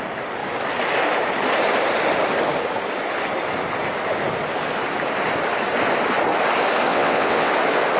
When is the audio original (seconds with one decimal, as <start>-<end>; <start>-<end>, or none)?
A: 0.0-6.9; 7.5-8.0